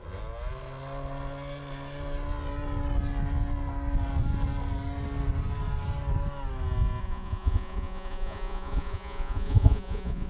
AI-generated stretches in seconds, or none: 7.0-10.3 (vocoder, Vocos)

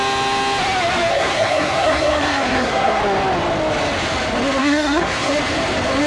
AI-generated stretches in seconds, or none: 1.1-3.0 (codec, SNAC); 4.6-5.3

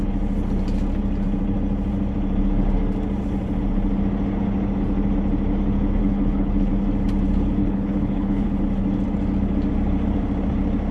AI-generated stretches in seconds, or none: 6.0-6.7 (codec, HILCodec); 7.6-8.6